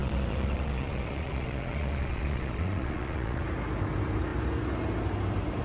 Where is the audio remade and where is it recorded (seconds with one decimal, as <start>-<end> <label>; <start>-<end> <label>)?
0.0-3.4 remade; 3.4-5.6 recorded